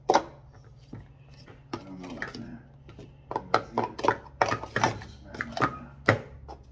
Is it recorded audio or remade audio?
recorded